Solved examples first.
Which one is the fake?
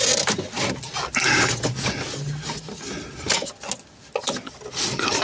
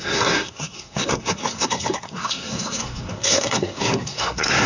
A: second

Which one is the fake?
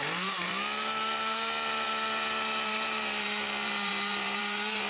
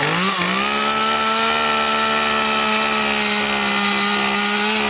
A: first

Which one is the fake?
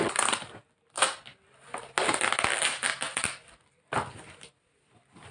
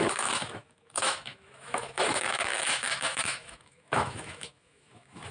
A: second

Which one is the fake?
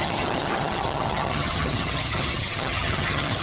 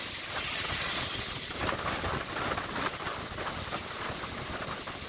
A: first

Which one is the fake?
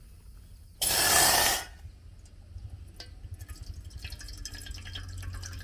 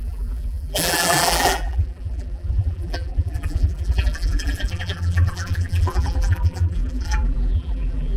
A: second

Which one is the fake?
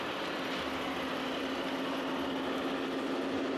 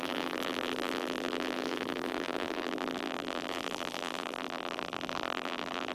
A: second